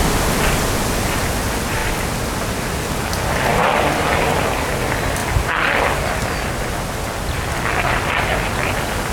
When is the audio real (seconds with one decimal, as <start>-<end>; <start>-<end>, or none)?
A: 0.0-9.1